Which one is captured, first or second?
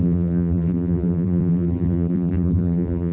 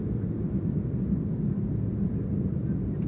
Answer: second